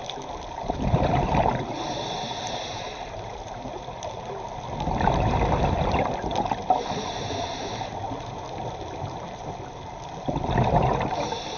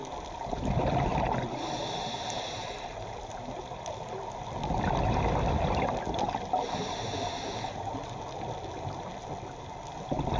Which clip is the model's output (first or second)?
first